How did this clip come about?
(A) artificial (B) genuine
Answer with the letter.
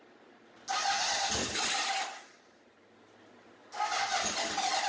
B